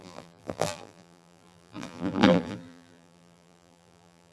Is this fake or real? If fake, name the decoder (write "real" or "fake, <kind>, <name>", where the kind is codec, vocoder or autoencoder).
fake, vocoder, BigVGAN v2